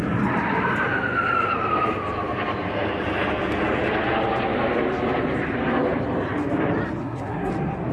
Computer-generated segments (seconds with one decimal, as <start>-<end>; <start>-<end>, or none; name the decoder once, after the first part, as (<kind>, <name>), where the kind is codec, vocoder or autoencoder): 7.0-7.5 (codec, SNAC)